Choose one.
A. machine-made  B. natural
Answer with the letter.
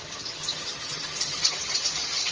A